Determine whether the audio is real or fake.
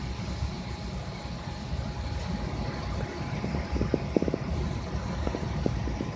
real